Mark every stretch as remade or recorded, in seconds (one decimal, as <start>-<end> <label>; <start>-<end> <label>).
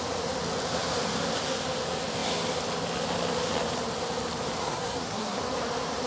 0.0-4.6 recorded; 4.6-5.4 remade; 5.4-6.1 recorded